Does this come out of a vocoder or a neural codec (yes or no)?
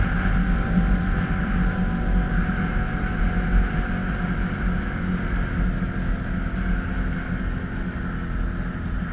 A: no